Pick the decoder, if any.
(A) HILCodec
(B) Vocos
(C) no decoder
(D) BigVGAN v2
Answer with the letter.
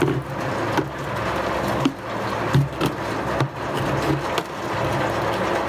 C